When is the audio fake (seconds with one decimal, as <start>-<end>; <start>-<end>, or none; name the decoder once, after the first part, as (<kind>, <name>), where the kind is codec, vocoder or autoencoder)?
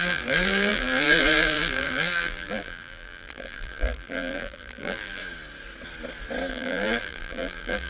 0.0-5.2 (vocoder, BigVGAN v2); 6.5-7.9